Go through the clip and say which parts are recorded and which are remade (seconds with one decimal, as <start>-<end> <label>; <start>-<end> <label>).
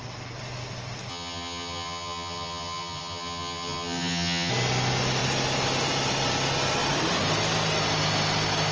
0.0-1.1 recorded; 1.1-4.5 remade; 4.5-8.7 recorded